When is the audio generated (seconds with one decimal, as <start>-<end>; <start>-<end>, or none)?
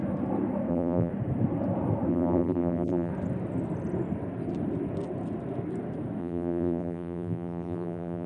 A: 0.7-1.1; 2.1-3.1; 6.2-8.3